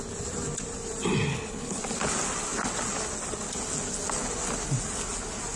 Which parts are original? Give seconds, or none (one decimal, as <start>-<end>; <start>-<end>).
0.0-1.3; 1.8-5.6